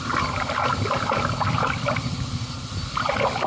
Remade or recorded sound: recorded